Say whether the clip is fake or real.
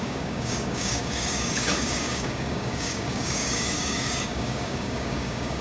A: fake